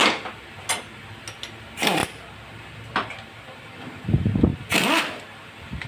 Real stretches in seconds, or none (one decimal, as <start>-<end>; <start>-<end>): 0.0-4.5; 5.2-5.9